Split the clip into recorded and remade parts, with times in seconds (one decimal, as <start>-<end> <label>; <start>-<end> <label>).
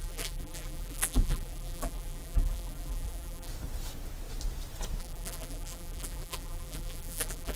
0.0-3.5 remade; 3.5-5.0 recorded; 5.0-7.6 remade